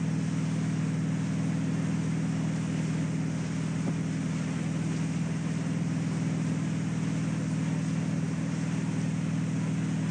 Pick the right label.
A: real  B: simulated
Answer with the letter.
A